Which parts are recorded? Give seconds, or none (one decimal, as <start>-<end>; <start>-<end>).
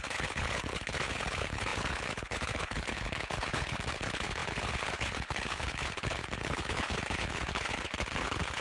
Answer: none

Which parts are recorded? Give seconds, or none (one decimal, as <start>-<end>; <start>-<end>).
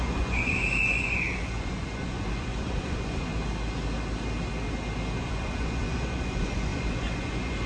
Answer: 3.3-5.2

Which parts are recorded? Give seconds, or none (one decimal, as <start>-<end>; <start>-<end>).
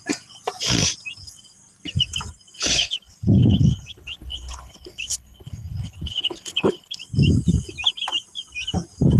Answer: 0.0-2.7; 7.0-9.2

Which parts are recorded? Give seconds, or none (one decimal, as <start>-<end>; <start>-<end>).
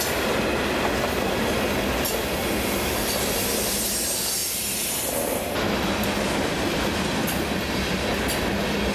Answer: 0.0-4.4; 5.0-8.9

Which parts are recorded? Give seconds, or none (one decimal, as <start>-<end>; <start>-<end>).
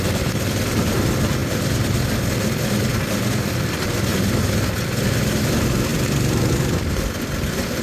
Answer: 4.1-5.4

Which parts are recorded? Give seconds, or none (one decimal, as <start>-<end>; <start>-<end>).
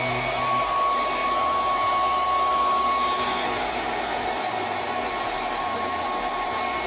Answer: 0.0-6.9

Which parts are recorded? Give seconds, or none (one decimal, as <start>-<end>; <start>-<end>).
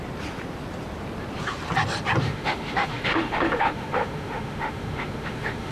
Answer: 0.0-2.2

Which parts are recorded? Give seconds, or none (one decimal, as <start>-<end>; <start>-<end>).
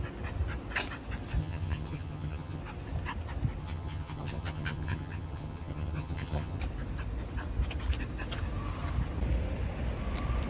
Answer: 0.0-1.4; 2.6-3.6; 6.6-10.5